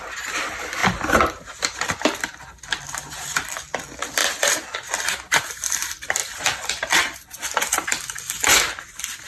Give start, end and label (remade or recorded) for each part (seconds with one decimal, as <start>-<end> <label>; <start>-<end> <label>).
0.0-4.2 recorded; 4.2-5.7 remade; 5.7-6.2 recorded; 6.2-9.3 remade